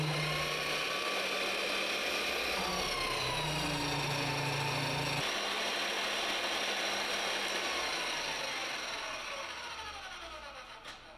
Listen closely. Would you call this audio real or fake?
real